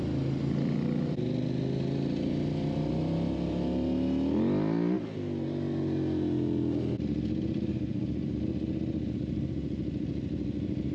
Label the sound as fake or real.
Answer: real